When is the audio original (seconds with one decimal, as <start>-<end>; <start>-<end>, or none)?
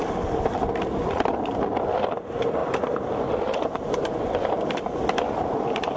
0.0-6.0